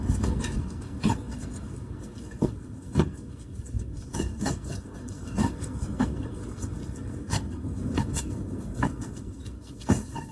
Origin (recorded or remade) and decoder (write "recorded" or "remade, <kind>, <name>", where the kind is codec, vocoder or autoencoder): remade, codec, SNAC